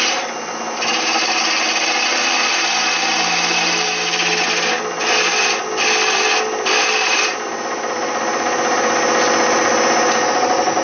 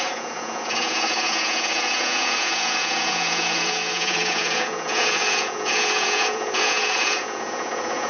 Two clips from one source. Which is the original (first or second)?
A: first